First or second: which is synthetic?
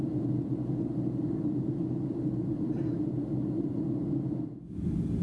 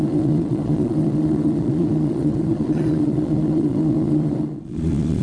second